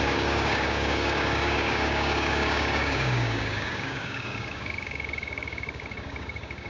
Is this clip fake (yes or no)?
yes